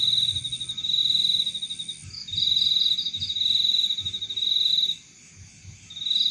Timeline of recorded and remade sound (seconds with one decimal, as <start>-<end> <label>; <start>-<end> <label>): 0.0-6.3 recorded